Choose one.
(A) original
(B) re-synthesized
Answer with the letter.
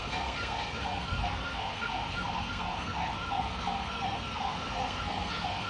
B